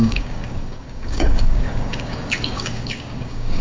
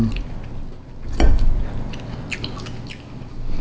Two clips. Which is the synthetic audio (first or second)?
first